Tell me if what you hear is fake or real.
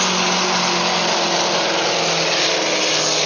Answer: real